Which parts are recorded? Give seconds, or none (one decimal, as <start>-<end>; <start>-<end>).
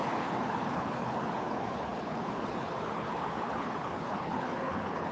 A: none